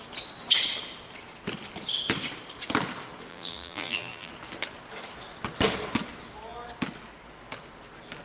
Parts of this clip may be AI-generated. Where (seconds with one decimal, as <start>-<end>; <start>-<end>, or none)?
3.3-4.3